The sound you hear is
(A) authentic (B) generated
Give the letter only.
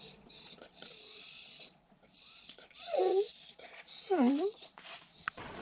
B